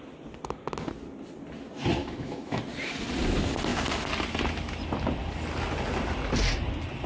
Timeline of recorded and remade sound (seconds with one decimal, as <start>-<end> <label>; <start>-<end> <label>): 0.0-2.0 recorded; 2.0-2.6 remade; 2.6-7.1 recorded